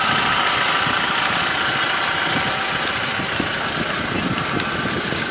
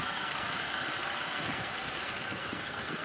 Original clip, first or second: first